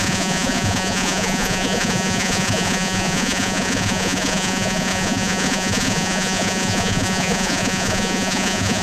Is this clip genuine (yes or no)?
no